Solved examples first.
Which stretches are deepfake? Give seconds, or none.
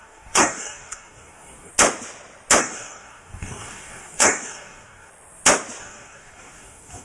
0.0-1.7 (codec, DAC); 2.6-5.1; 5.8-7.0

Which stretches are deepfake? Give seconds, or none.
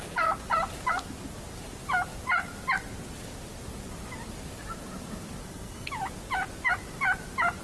5.4-5.9 (codec, SNAC)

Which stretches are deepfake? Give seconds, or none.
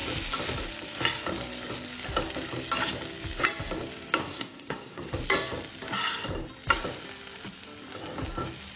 4.2-5.1 (codec, SNAC)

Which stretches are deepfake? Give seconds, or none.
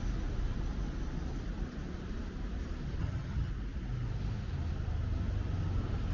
3.0-3.5 (vocoder, HiFi-GAN)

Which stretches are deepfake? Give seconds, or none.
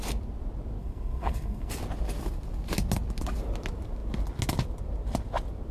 0.8-1.7 (codec, SNAC)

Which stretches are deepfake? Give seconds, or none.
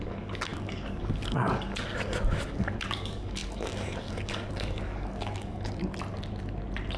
0.0-5.8 (codec, DAC)